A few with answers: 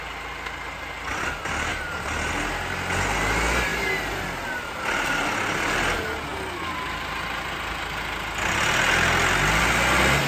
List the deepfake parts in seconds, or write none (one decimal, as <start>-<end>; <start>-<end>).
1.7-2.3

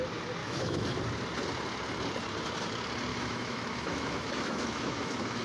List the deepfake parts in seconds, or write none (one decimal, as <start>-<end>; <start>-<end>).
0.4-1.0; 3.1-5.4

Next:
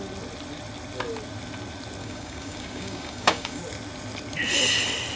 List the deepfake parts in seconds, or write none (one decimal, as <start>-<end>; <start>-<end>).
2.0-3.6

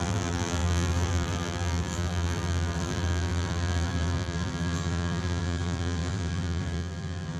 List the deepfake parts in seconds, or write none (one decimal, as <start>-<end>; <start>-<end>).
0.0-7.4

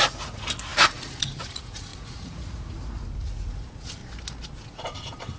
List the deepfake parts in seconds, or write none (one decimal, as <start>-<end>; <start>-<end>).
0.0-4.0; 4.6-5.4